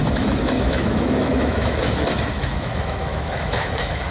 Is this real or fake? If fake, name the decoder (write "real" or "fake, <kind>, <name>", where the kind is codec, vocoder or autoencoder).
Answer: fake, autoencoder, DAC-VAE